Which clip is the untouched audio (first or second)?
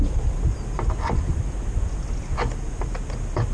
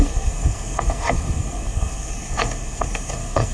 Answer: first